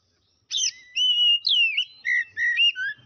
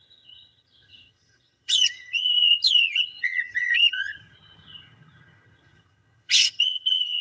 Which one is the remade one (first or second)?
second